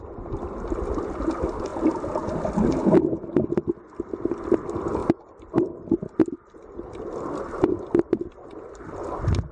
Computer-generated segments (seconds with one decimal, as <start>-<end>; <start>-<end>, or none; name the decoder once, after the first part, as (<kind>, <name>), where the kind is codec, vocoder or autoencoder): none